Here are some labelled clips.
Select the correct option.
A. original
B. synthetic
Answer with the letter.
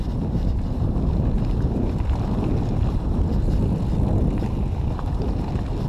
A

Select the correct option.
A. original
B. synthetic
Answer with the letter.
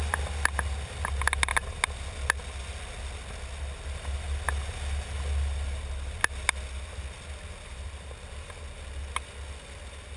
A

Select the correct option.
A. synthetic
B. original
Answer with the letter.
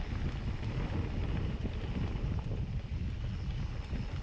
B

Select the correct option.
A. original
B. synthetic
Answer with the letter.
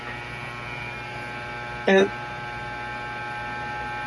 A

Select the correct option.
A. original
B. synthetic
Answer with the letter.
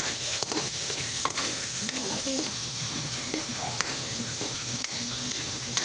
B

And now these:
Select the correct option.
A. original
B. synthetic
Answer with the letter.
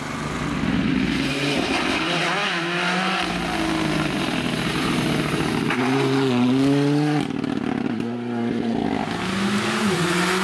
A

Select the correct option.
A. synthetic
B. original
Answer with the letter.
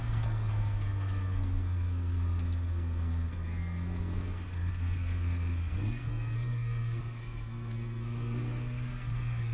A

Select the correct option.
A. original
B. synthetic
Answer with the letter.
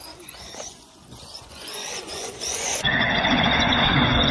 B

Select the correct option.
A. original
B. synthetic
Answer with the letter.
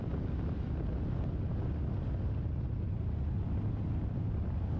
A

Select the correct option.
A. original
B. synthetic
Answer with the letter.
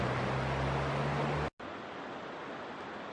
A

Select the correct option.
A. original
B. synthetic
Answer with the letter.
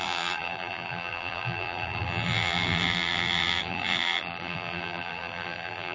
B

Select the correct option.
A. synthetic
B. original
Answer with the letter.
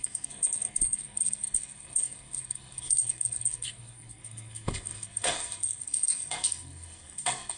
A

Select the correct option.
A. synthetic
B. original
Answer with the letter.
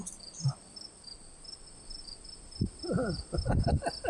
A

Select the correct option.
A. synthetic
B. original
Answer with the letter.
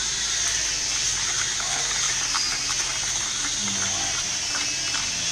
B